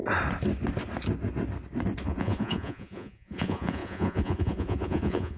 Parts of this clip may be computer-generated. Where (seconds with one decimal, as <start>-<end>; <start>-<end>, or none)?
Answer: 2.0-5.4